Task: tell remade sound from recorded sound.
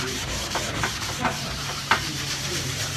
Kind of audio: remade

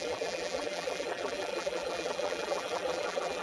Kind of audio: remade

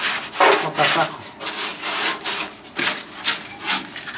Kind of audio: recorded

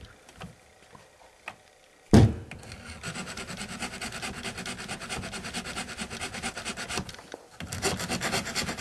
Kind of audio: recorded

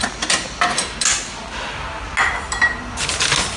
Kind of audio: recorded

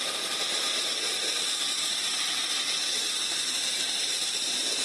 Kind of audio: remade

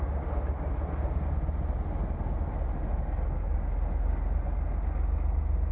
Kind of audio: recorded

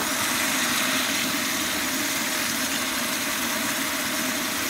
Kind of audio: recorded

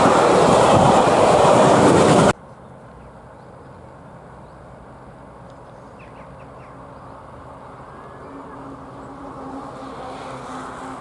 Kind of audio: recorded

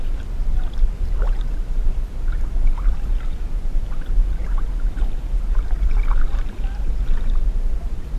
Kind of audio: remade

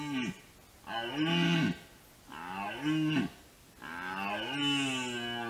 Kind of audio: recorded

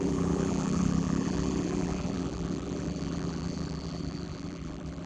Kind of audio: remade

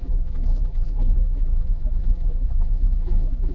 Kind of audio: remade